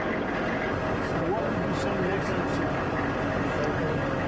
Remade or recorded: recorded